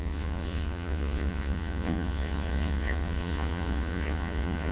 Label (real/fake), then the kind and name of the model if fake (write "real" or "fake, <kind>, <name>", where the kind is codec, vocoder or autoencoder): fake, vocoder, Vocos